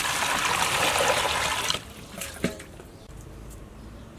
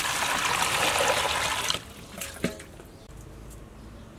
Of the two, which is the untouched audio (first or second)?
second